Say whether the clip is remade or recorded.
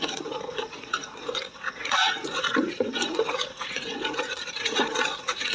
remade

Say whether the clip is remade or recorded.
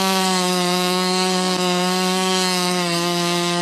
remade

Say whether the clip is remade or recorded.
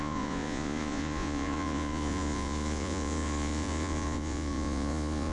remade